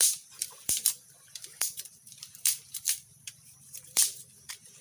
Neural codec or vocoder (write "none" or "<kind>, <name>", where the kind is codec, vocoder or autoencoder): vocoder, BigVGAN v2